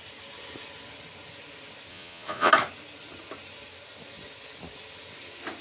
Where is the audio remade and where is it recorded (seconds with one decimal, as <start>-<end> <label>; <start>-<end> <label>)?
0.0-1.9 recorded; 1.9-2.5 remade; 2.5-5.6 recorded